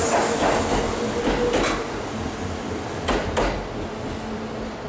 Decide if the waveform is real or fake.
real